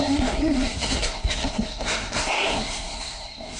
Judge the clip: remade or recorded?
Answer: remade